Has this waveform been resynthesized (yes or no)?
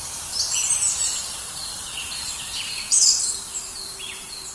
yes